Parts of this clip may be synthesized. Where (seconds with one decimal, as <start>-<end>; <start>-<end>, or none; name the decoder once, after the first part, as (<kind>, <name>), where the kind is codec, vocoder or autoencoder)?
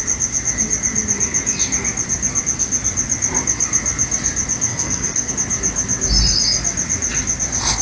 4.7-5.3 (codec, SNAC)